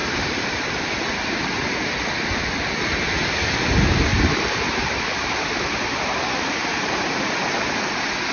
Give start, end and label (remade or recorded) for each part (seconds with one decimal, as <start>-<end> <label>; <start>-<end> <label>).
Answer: 0.0-0.8 remade; 0.8-4.1 recorded; 4.1-7.2 remade; 7.2-8.3 recorded